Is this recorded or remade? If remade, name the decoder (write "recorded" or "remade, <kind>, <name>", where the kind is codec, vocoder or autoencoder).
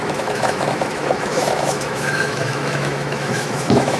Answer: remade, autoencoder, DAC-VAE